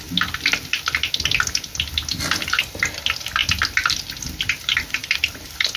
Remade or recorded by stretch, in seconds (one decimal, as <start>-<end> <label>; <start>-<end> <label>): 0.0-3.4 recorded; 3.4-5.8 remade